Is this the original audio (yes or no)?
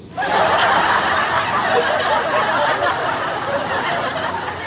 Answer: no